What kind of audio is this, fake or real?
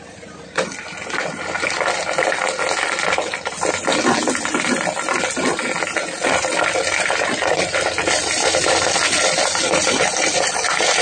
real